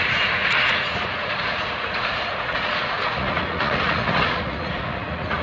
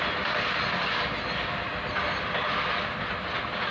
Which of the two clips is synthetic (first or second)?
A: first